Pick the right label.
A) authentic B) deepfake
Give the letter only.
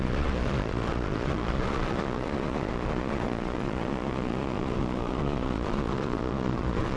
B